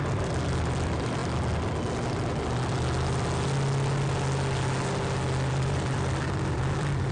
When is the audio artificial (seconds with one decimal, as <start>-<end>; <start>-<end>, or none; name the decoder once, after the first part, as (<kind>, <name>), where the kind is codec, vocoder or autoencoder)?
0.0-1.2 (vocoder, BigVGAN v2); 5.5-7.1